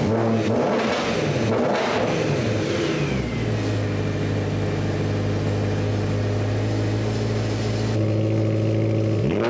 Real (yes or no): yes